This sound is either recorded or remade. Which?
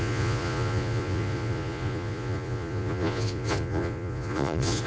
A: remade